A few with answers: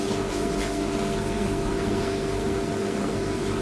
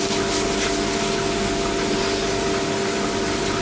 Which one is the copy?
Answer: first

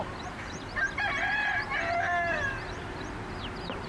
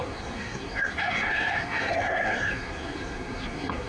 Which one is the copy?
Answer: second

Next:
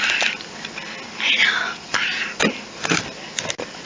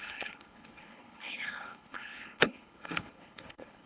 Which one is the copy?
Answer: second